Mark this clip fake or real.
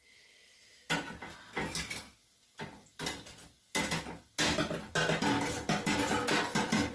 real